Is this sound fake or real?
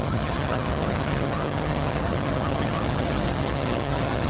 fake